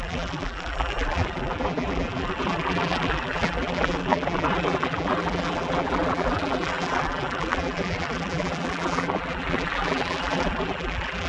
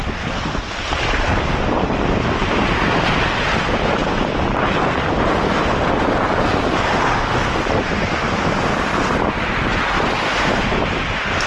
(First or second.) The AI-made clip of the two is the first